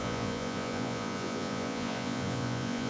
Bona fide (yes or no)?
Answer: no